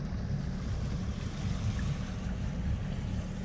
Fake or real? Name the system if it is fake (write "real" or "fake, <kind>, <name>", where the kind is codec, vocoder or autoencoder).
real